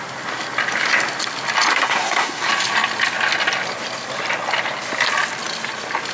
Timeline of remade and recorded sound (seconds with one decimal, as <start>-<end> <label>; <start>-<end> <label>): 0.0-1.7 recorded; 1.7-2.5 remade; 2.5-6.1 recorded